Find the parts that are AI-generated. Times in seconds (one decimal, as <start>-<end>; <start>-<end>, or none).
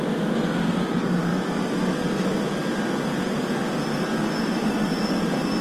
none